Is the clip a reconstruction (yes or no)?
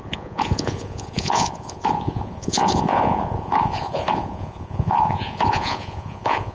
yes